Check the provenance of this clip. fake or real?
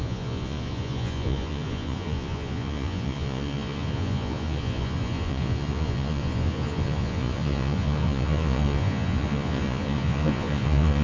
fake